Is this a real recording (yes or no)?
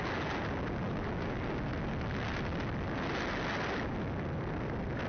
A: yes